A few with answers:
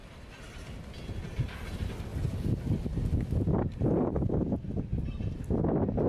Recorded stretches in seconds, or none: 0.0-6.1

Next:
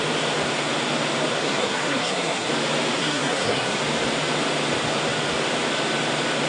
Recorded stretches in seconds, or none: 0.0-1.4; 2.5-3.0; 3.8-6.5

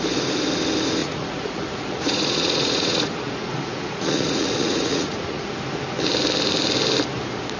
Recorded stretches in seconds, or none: 0.0-1.0; 5.5-7.6